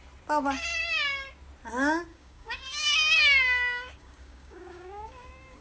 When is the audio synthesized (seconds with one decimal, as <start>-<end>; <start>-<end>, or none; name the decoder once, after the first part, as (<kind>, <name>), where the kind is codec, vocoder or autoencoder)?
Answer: 2.1-5.6 (codec, DAC)